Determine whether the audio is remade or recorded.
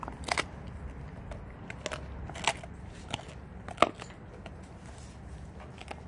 recorded